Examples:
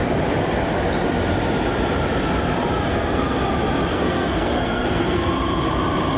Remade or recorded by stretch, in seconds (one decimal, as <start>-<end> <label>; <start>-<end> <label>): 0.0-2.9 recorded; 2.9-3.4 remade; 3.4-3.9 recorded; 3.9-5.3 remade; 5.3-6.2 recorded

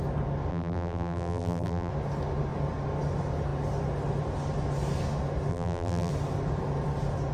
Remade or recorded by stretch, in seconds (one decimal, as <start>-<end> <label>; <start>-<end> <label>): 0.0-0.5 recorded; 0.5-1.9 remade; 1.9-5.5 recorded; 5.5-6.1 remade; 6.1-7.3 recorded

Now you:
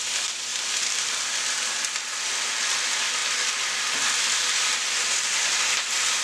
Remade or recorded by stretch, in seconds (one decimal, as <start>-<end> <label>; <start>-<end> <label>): 0.0-3.2 remade; 3.2-5.0 recorded; 5.0-6.2 remade

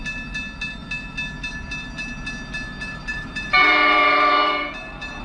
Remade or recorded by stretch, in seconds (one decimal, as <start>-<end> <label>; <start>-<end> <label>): 0.0-3.1 recorded; 3.1-5.2 remade

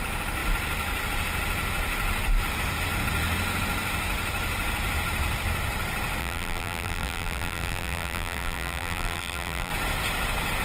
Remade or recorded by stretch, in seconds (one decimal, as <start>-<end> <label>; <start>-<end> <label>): 0.0-6.2 recorded; 6.2-9.7 remade; 9.7-10.6 recorded

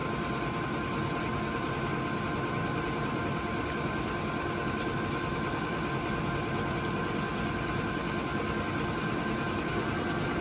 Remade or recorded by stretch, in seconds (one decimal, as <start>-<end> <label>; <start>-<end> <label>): 0.0-10.4 recorded